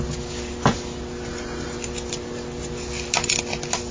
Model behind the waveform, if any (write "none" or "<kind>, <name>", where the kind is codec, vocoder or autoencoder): none